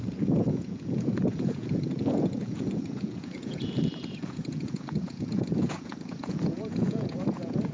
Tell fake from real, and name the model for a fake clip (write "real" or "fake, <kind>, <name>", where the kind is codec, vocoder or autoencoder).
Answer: fake, vocoder, Vocos